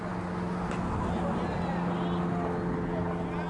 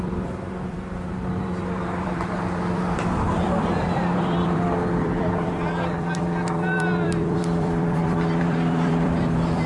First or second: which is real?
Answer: first